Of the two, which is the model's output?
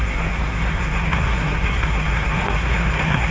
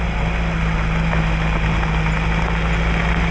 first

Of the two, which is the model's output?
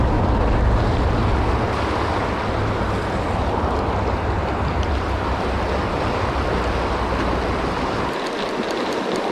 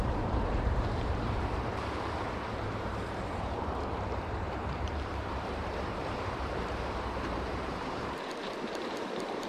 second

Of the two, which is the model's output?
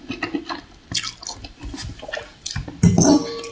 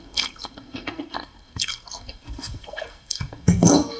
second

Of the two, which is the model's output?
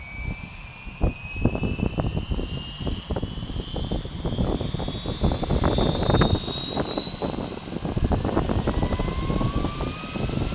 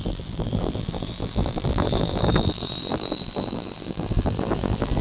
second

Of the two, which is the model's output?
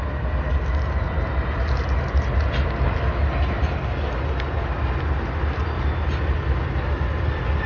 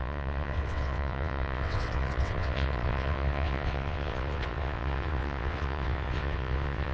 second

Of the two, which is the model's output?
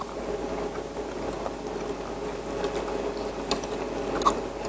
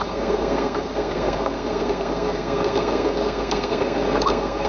second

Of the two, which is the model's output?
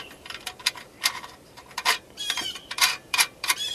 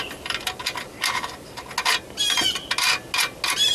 first